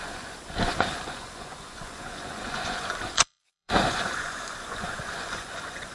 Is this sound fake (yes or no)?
yes